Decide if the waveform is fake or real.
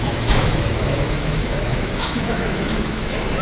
fake